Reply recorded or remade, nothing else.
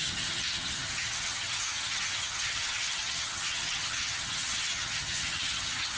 remade